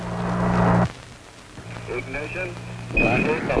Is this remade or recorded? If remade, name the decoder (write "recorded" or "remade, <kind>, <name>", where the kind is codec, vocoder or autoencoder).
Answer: recorded